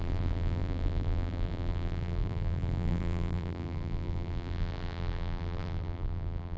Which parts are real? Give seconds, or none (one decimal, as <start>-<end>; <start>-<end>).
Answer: none